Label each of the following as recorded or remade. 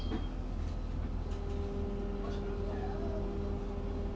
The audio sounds recorded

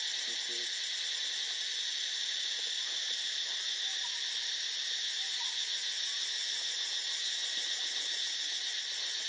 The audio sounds recorded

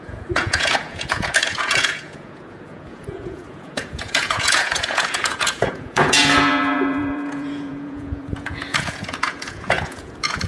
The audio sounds remade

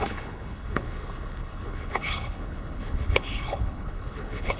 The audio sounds remade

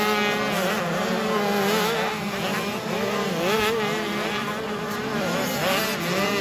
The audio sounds recorded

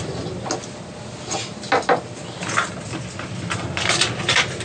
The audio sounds recorded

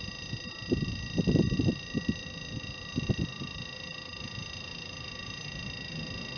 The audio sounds recorded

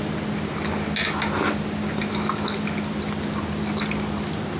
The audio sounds recorded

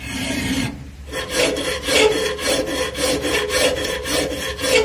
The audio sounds remade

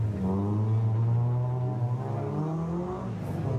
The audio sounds recorded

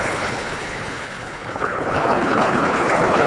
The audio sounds remade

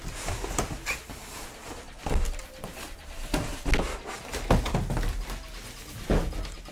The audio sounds recorded